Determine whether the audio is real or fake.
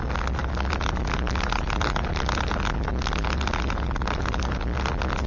real